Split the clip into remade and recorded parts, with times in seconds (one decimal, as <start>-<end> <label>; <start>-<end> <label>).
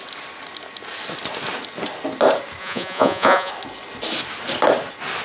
0.0-2.6 recorded; 2.6-3.5 remade; 3.5-5.2 recorded